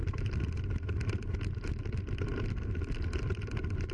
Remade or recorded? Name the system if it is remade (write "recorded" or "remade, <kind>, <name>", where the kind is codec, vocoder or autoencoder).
recorded